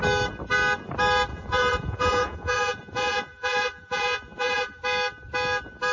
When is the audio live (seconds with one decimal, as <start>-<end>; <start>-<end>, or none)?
0.0-1.3; 4.8-5.9